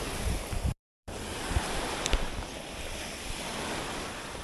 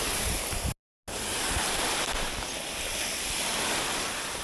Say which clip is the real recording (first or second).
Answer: second